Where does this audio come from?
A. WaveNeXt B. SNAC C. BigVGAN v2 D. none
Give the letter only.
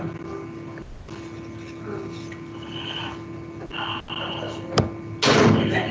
D